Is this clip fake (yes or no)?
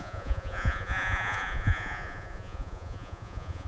yes